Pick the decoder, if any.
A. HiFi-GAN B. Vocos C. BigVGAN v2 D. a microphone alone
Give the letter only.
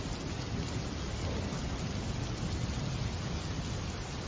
D